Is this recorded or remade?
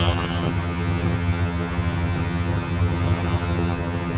remade